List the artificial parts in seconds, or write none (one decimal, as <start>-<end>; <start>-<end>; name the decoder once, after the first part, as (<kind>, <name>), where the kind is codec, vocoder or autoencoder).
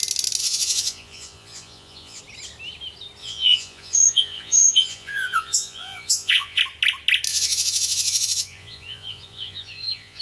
0.4-2.2 (vocoder, Vocos); 3.2-6.6; 7.3-10.2